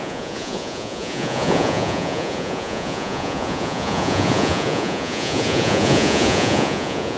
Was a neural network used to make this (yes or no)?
yes